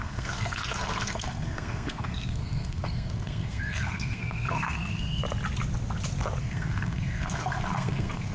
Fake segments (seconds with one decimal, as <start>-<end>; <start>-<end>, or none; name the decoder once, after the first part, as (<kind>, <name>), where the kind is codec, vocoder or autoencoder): 0.0-5.2 (codec, SNAC); 6.4-8.3